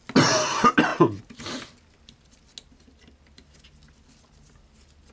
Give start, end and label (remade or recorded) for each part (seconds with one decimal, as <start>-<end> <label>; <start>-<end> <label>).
0.0-5.1 recorded